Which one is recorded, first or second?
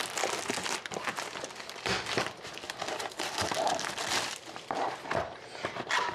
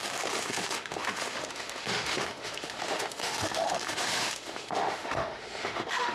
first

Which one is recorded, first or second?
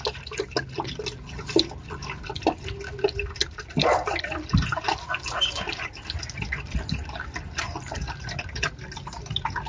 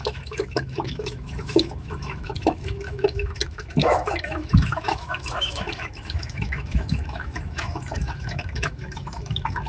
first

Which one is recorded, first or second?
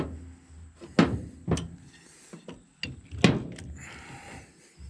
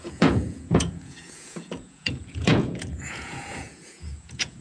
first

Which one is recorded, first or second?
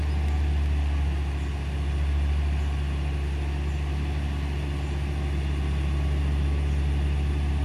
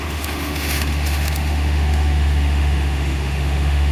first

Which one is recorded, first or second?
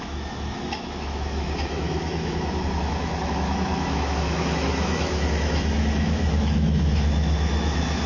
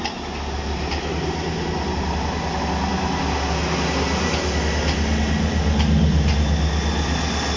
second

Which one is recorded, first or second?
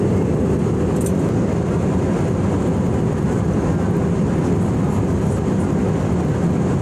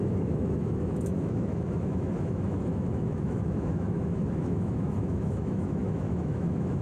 first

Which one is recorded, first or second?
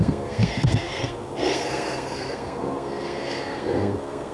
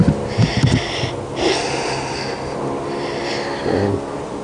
second